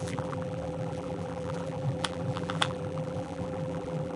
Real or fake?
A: fake